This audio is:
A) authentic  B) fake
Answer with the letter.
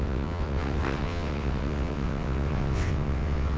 B